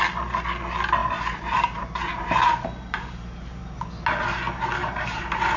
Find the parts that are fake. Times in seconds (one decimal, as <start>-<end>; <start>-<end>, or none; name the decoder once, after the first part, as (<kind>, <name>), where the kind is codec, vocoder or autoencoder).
1.0-3.6 (vocoder, BigVGAN v2); 4.8-5.6